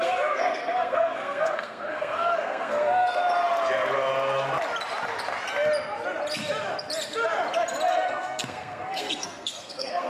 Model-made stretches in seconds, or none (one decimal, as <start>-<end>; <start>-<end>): 0.0-3.2; 7.9-10.1